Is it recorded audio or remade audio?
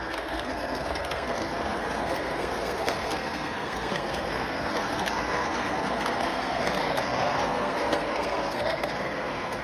remade